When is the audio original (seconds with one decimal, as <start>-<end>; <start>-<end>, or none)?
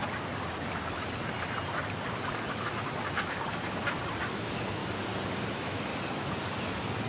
0.0-4.3; 4.8-5.5; 5.9-7.1